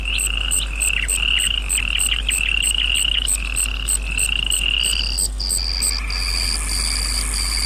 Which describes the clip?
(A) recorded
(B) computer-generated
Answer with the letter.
A